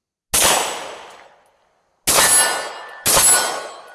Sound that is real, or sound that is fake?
real